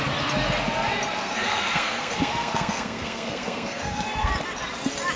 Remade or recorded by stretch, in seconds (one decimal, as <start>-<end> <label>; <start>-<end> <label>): 0.0-1.2 recorded; 1.2-4.3 remade; 4.3-5.2 recorded